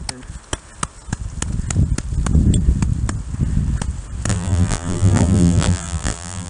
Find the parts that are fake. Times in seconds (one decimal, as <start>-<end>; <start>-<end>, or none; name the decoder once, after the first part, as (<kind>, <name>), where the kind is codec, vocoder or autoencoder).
4.3-6.5 (vocoder, BigVGAN v2)

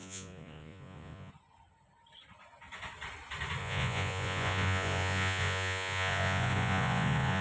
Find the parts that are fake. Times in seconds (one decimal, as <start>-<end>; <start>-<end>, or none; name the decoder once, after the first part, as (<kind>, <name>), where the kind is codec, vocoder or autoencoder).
0.0-1.3 (vocoder, Vocos); 3.6-7.4